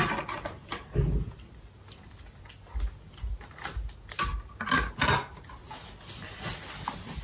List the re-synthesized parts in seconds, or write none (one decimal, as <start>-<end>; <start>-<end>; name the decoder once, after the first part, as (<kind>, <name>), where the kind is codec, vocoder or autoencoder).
none